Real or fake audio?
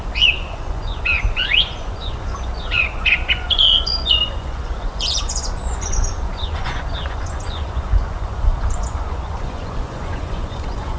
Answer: fake